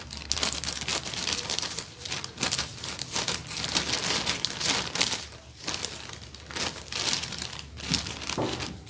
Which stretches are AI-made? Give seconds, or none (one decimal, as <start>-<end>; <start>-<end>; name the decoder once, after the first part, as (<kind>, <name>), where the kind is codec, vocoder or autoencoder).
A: none